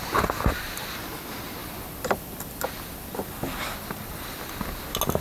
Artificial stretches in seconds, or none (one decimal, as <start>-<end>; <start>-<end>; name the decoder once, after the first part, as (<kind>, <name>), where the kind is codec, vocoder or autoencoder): none